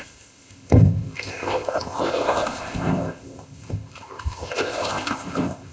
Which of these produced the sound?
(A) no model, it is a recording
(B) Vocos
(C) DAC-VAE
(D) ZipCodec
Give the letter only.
D